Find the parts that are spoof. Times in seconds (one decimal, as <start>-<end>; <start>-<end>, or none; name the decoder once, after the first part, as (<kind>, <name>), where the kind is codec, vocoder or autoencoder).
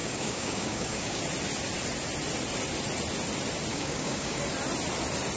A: 0.0-1.2 (codec, DAC); 3.7-4.4